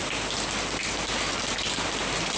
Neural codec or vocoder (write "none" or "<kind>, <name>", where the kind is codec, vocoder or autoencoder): none